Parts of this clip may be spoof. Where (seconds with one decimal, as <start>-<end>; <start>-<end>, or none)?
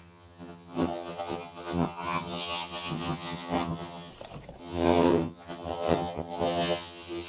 0.0-4.1; 4.6-7.3